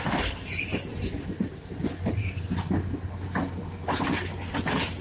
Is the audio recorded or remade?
recorded